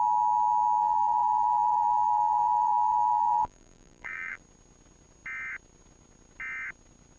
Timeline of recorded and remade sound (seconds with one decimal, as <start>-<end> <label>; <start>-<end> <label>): 0.0-0.8 recorded; 0.8-4.4 remade; 4.4-7.2 recorded